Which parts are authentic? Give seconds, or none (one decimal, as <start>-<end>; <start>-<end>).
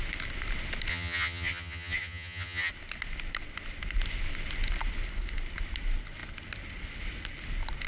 0.0-0.9; 2.7-7.9